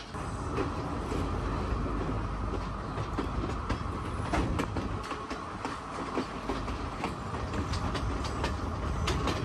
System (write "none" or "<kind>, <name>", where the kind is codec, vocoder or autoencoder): none